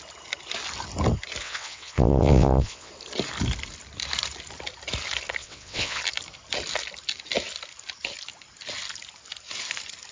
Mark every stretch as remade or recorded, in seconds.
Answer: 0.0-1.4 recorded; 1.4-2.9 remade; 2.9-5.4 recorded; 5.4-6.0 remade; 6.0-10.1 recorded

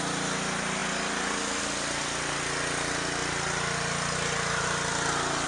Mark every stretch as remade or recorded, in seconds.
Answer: 0.0-5.5 recorded

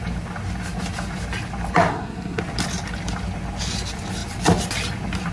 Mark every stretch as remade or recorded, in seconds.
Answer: 0.0-1.9 recorded; 1.9-2.4 remade; 2.4-5.3 recorded

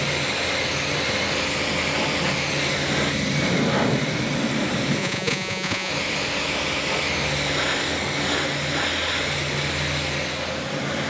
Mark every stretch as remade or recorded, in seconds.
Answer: 0.0-5.0 recorded; 5.0-5.9 remade; 5.9-11.1 recorded